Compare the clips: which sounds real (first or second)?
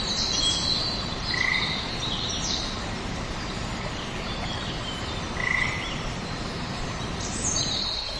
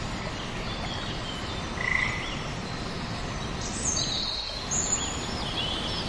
second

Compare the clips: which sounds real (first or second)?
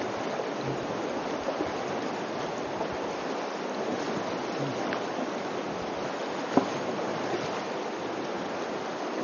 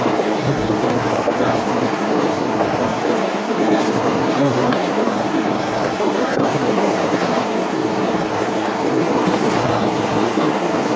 first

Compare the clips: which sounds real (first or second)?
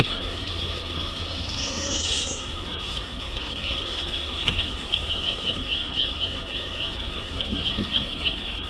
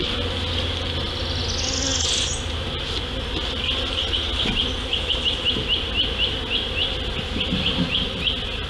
second